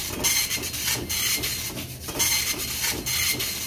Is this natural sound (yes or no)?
yes